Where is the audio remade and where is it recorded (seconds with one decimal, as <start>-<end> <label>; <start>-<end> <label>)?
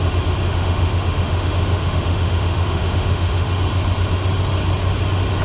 0.0-0.4 recorded; 0.4-3.6 remade; 3.6-5.4 recorded